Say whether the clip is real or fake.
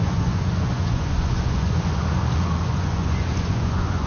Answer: fake